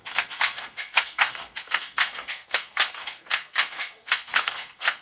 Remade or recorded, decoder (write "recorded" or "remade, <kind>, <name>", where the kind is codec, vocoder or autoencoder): remade, codec, SNAC